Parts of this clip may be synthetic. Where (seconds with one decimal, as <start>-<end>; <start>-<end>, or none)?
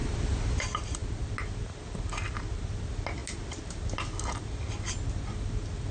0.0-0.6